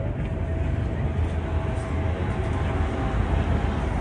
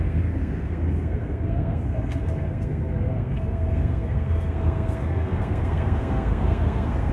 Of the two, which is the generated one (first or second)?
second